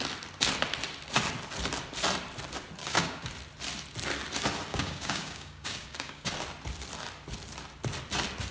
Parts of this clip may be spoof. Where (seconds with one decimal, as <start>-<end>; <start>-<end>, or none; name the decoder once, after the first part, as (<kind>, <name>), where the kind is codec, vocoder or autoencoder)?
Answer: 2.8-3.3 (codec, DAC); 4.7-6.3